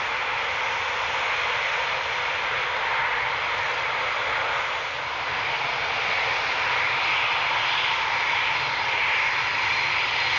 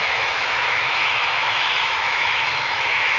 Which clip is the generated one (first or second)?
second